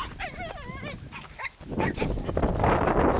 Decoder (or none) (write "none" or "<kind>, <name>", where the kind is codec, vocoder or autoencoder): none